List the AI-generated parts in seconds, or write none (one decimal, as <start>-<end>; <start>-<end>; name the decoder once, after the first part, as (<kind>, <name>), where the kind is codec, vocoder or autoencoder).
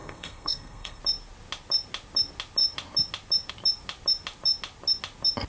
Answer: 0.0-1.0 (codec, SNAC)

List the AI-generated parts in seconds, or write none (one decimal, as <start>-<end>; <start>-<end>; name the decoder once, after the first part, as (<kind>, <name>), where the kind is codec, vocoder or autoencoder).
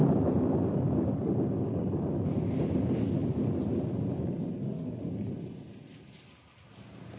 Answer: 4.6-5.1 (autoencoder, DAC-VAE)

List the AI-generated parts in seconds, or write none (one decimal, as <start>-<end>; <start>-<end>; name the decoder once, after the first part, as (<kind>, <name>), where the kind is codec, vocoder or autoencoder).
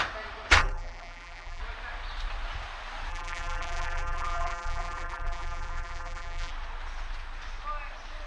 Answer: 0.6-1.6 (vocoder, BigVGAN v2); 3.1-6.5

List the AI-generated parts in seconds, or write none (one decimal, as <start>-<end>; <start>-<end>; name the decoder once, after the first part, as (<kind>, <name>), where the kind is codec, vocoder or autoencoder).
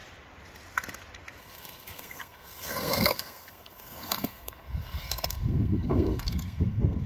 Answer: 1.4-7.1 (codec, SNAC)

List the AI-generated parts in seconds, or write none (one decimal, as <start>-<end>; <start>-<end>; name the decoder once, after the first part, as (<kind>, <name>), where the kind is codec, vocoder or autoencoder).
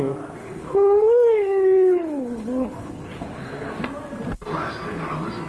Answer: 0.4-3.7 (codec, HILCodec)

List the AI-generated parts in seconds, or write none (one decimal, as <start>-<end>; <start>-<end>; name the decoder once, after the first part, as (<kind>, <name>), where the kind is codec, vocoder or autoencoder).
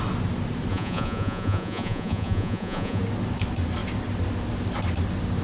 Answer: 0.7-3.0 (vocoder, Vocos)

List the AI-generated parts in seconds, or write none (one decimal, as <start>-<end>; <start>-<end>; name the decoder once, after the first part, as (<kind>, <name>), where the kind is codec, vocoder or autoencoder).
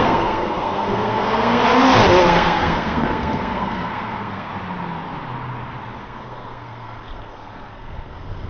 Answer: 0.0-1.6 (codec, SNAC); 2.2-4.5; 6.0-8.5